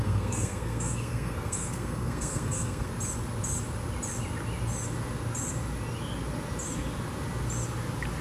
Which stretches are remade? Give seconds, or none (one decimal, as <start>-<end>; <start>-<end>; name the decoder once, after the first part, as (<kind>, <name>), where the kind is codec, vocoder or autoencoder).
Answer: 0.0-2.9 (codec, SNAC)